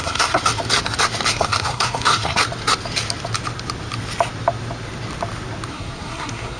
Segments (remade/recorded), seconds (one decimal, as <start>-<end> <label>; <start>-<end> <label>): 0.0-0.4 remade; 0.4-1.3 recorded; 1.3-2.4 remade; 2.4-5.7 recorded; 5.7-6.6 remade